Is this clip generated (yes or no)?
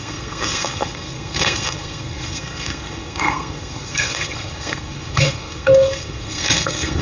yes